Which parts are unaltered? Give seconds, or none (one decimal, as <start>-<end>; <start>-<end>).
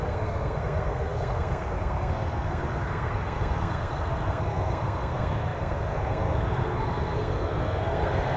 none